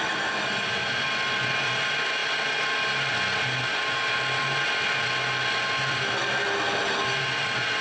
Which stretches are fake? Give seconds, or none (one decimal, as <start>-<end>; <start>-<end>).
none